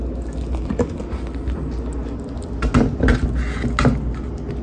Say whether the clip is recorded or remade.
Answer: recorded